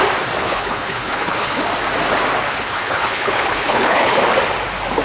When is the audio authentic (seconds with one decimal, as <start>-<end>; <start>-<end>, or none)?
0.0-0.4; 1.6-2.5; 4.2-5.0